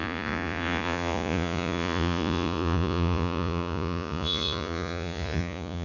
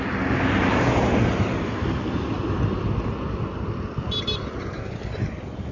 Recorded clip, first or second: second